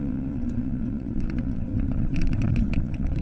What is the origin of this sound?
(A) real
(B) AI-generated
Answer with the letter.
B